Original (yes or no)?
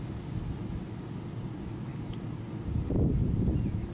yes